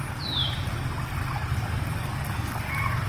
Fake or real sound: real